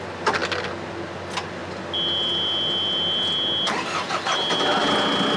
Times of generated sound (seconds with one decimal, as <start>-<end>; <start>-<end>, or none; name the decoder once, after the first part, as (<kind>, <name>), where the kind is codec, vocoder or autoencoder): none